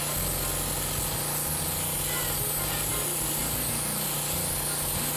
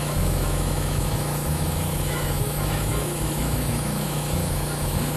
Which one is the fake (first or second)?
second